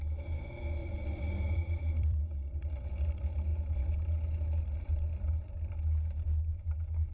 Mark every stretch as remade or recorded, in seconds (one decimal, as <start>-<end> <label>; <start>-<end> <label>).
0.0-0.8 recorded; 0.8-2.2 remade; 2.2-7.1 recorded